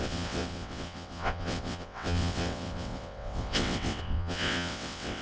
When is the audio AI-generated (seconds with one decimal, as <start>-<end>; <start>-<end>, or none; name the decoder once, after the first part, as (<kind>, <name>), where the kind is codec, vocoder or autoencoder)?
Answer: 0.0-5.2 (vocoder, WaveNeXt)